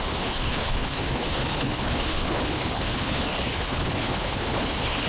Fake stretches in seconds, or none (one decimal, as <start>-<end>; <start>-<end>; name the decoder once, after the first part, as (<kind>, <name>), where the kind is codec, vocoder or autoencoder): 0.0-5.1 (codec, HILCodec)